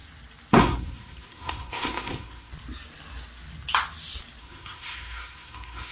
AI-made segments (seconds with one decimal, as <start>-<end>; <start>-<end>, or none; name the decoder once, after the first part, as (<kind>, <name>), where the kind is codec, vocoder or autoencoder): 0.6-2.5 (codec, SNAC); 4.4-5.9